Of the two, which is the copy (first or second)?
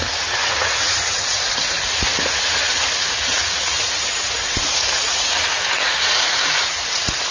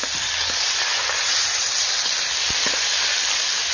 first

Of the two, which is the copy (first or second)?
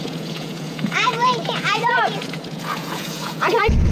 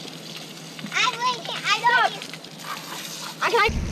first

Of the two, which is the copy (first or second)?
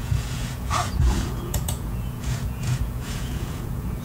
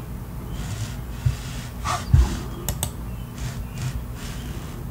first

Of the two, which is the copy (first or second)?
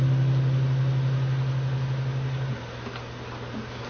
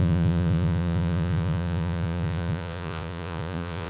second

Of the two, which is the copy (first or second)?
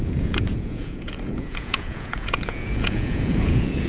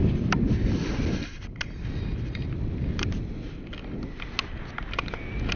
first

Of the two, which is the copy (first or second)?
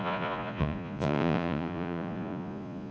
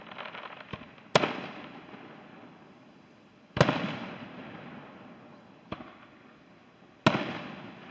first